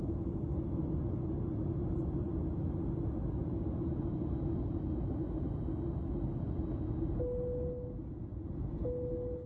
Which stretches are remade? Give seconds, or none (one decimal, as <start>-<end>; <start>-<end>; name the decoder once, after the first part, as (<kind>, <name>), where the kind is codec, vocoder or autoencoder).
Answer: none